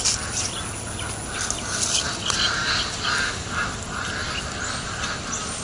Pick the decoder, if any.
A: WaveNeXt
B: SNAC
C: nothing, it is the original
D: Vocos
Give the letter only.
C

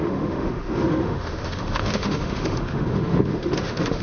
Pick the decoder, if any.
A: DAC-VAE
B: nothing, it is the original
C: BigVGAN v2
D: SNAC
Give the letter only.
A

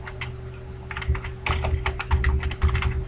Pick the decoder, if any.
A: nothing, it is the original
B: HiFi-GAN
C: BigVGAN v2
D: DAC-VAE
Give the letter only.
A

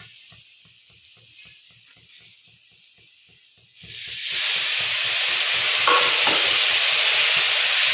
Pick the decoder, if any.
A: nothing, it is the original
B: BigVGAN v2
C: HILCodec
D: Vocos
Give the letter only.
A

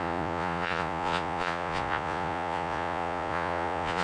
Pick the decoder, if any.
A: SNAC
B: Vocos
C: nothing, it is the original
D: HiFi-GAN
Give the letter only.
B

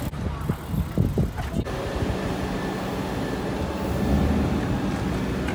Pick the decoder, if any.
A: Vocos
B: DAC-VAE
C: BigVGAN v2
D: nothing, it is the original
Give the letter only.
D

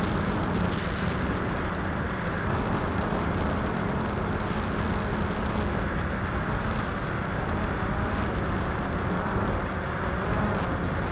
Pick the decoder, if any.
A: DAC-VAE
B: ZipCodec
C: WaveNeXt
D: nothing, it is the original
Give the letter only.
D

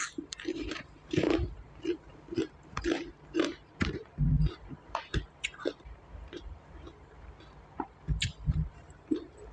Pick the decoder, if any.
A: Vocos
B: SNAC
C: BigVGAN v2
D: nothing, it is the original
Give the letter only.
C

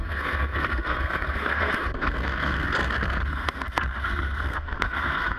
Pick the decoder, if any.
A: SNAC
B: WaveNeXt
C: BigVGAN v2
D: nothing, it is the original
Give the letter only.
A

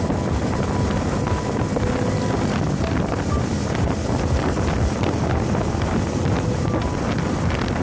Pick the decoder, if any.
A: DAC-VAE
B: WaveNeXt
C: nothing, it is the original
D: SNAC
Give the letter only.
C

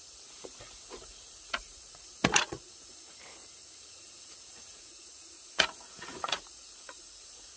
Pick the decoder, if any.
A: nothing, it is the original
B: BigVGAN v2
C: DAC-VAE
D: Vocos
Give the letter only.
D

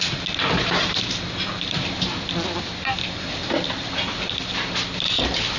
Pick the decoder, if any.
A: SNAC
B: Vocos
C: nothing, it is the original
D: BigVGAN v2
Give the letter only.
C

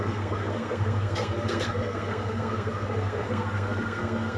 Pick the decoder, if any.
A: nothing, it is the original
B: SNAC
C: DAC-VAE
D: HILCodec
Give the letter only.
B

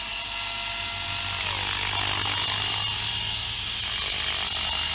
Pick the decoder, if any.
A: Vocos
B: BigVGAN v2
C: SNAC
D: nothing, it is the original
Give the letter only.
D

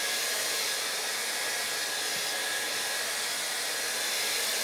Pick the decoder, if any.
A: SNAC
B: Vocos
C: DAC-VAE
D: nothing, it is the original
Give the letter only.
D